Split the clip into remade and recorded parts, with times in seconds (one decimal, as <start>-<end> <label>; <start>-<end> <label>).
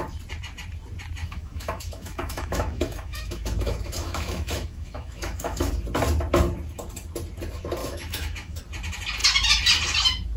0.0-1.2 recorded; 1.2-5.7 remade; 5.7-7.8 recorded; 7.8-8.6 remade; 8.6-10.4 recorded